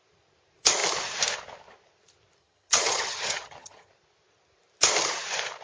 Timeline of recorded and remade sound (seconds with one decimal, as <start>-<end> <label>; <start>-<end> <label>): 0.0-2.4 recorded; 2.4-3.9 remade; 3.9-5.6 recorded